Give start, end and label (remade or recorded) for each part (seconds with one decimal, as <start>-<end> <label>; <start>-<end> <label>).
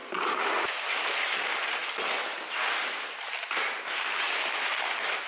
0.0-0.5 remade; 0.5-5.3 recorded